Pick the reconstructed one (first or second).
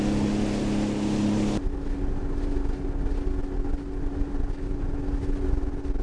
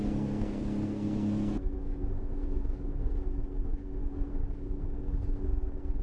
second